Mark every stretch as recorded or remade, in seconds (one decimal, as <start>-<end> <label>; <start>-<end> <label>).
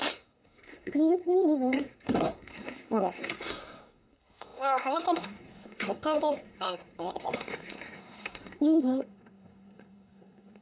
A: 0.0-10.6 remade